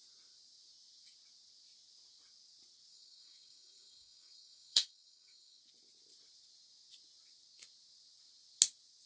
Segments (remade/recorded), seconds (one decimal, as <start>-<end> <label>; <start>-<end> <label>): 0.0-2.9 recorded; 2.9-5.6 remade; 5.6-9.1 recorded